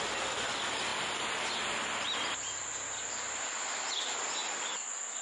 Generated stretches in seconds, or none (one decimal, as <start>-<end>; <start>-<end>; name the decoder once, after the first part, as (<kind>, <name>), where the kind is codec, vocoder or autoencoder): none